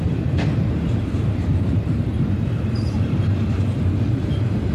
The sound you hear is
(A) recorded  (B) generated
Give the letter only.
B